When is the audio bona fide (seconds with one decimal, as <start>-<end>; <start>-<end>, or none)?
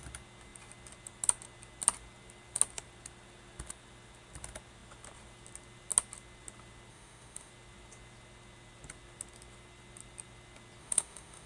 0.0-6.9; 7.5-10.8